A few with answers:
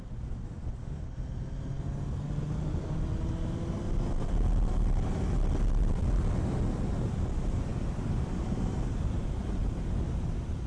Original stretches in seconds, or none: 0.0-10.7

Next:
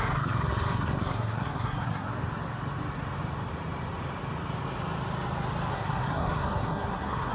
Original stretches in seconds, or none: 2.1-5.7

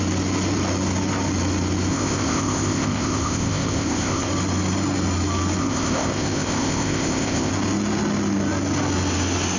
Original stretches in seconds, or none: 0.0-1.9; 4.3-5.6; 7.5-9.6

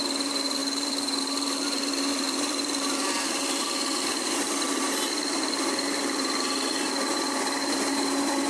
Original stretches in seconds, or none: none

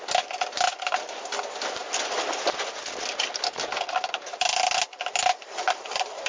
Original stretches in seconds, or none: 0.0-6.3

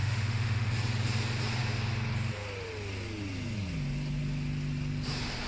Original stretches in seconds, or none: 0.7-5.5

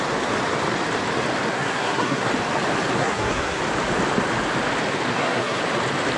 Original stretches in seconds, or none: 0.0-1.5; 2.3-3.0; 3.6-5.1; 5.6-6.2